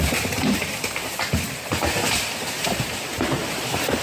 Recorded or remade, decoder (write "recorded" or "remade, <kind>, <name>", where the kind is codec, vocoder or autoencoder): recorded